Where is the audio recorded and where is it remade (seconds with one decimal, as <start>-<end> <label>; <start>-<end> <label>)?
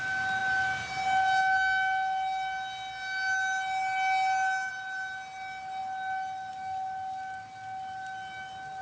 0.0-8.8 recorded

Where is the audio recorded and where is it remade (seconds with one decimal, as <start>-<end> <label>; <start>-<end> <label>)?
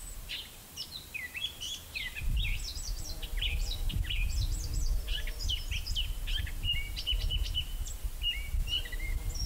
0.0-9.5 remade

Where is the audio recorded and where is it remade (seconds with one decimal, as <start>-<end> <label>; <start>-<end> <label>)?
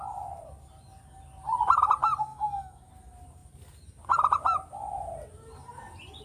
0.0-2.3 recorded; 2.3-2.9 remade; 2.9-6.2 recorded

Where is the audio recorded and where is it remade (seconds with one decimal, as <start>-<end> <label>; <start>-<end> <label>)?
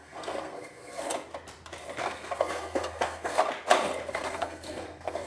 0.0-1.1 remade; 1.1-2.0 recorded; 2.0-3.4 remade; 3.4-4.1 recorded; 4.1-5.3 remade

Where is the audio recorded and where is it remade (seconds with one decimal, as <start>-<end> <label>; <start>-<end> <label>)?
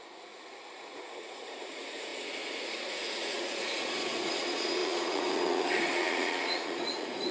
0.0-7.3 remade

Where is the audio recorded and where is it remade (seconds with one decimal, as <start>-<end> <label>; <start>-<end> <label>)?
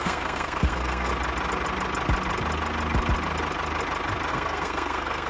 0.0-1.1 remade; 1.1-4.3 recorded; 4.3-5.3 remade